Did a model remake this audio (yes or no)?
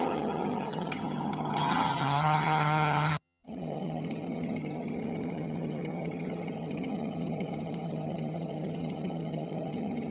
yes